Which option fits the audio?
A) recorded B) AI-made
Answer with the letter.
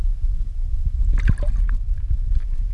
A